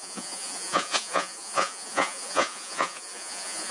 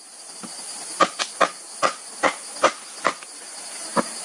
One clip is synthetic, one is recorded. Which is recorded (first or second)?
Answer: second